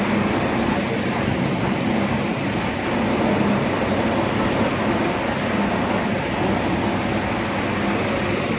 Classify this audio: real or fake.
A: real